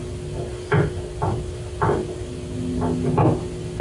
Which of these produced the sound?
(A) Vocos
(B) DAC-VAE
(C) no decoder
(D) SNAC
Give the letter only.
C